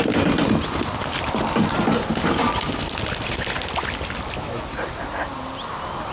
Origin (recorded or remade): recorded